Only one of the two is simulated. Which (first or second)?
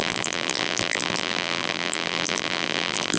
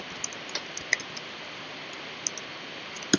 first